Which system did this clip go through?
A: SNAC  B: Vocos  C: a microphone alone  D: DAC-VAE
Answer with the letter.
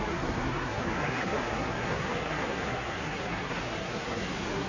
A